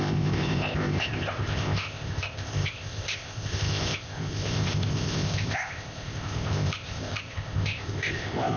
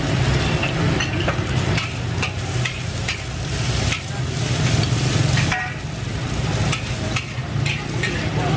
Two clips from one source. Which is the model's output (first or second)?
first